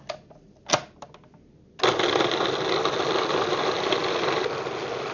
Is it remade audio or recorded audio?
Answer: recorded